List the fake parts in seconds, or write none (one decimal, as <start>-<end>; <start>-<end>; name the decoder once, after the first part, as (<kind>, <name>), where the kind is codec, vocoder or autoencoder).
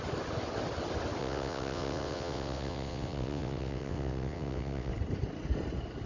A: 1.2-4.9 (vocoder, WaveNeXt)